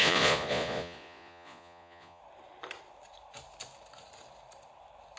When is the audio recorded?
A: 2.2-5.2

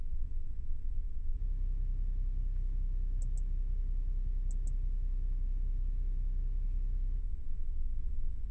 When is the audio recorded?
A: 1.4-7.2

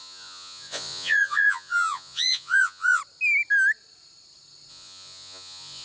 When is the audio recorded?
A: 3.0-4.7

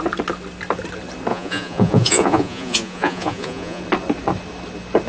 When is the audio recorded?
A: 0.0-1.3; 3.8-5.1

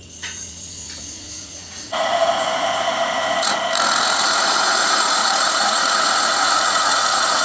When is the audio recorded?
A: none

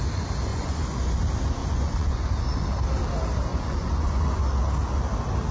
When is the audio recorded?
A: 0.0-0.5; 1.2-1.6; 2.2-3.5; 4.4-5.5

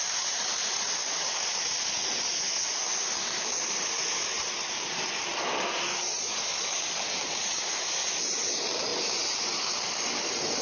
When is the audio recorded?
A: 0.0-0.6; 1.3-10.6

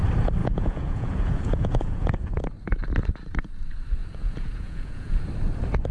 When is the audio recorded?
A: 0.0-0.4; 2.4-4.0; 5.1-5.9